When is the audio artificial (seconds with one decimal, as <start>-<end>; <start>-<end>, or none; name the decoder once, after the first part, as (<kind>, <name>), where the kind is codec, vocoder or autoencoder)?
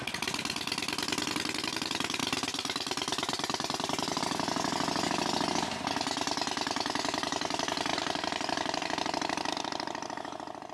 2.2-4.2 (vocoder, BigVGAN v2); 7.9-9.5